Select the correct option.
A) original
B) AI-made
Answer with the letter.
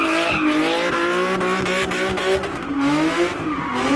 A